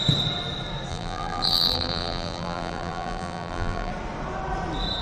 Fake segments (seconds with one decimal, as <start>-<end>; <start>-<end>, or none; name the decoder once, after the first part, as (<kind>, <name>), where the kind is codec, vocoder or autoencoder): 0.9-3.9 (vocoder, BigVGAN v2)